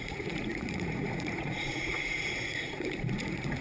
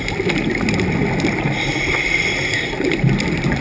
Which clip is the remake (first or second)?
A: first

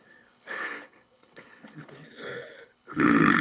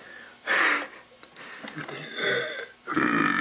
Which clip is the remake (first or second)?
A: first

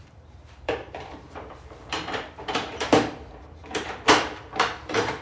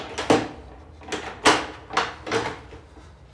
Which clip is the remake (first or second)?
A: first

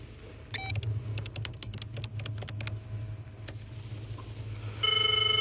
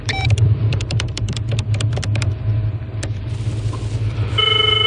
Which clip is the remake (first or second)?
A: second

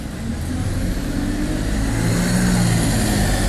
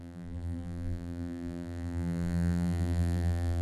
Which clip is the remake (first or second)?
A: second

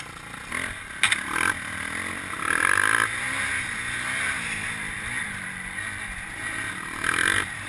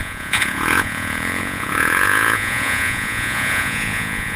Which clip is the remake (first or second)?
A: second